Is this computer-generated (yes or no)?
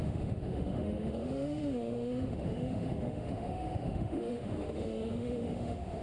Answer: yes